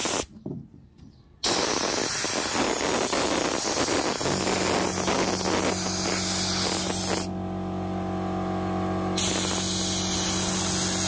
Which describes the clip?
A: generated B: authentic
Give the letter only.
B